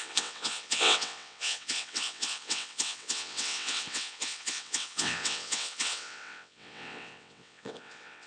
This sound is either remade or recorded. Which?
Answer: remade